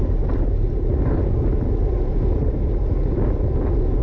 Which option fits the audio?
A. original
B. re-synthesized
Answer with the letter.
A